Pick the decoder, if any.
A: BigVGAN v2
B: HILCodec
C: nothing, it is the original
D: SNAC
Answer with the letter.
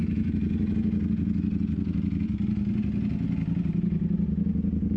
C